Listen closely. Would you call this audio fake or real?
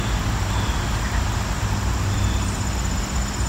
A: real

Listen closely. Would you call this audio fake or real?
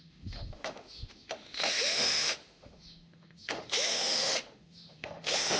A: fake